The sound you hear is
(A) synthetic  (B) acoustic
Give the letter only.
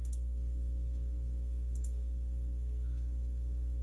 A